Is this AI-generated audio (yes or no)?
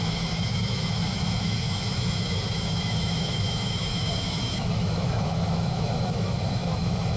yes